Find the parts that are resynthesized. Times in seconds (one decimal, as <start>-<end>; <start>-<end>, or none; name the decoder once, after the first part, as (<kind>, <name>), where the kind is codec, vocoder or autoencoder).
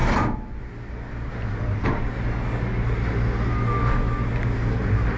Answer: none